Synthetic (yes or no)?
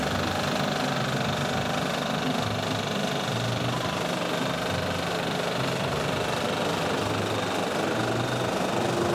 no